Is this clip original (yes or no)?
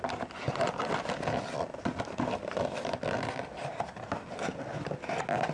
yes